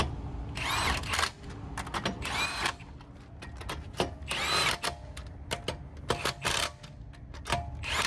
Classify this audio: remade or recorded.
recorded